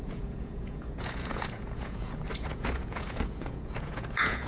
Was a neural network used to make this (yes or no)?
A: yes